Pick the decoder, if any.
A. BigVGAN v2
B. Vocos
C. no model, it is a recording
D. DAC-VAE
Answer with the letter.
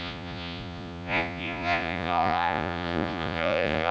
B